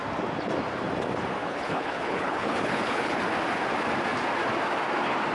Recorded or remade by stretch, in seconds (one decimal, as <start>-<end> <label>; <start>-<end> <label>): 0.0-1.4 recorded; 1.4-3.2 remade; 3.2-5.3 recorded